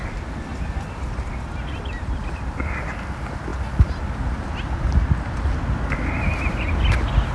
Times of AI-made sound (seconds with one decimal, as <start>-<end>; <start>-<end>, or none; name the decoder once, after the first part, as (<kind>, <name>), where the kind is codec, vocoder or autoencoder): none